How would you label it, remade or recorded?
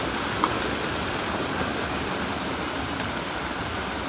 recorded